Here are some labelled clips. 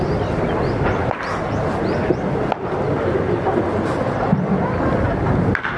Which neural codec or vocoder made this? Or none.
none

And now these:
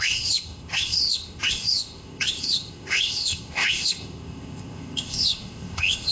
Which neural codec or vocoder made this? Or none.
codec, ZipCodec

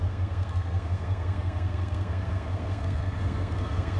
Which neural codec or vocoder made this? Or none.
codec, SNAC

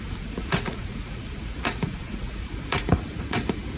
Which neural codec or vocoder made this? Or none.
vocoder, Vocos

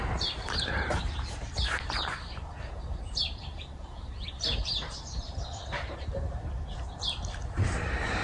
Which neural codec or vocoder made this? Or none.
vocoder, BigVGAN v2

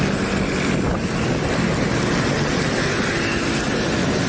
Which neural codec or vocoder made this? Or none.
none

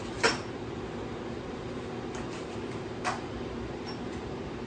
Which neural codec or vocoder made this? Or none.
none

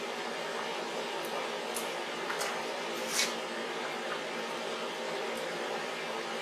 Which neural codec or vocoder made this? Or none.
none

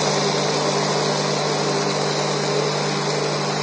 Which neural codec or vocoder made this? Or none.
none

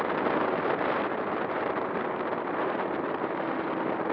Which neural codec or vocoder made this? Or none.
none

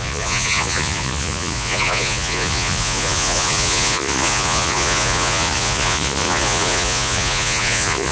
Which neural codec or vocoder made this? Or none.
vocoder, Vocos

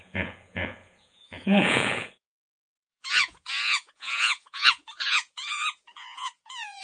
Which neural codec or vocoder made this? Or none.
vocoder, Vocos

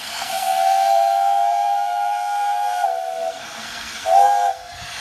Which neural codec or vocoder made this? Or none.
codec, SNAC